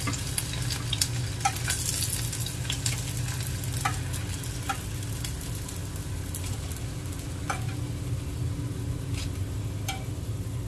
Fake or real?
real